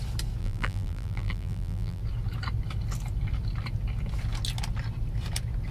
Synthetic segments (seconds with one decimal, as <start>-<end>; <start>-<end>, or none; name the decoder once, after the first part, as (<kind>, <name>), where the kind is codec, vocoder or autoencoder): 0.4-2.0 (vocoder, BigVGAN v2)